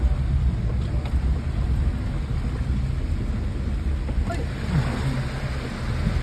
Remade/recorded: recorded